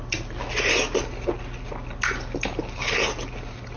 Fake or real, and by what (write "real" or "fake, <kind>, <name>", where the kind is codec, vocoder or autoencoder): real